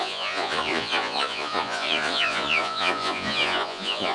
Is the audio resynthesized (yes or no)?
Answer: yes